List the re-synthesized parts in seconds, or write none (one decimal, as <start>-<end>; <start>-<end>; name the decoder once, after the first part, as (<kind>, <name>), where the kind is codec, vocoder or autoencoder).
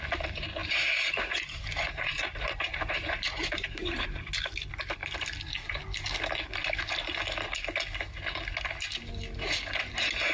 0.6-4.2 (vocoder, BigVGAN v2)